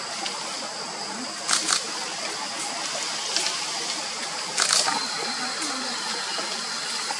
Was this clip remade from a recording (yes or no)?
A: no